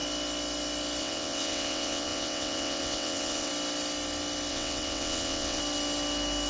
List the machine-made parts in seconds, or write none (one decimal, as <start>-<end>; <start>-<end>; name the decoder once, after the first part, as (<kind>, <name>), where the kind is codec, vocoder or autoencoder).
1.0-3.5 (vocoder, WaveNeXt); 4.5-5.6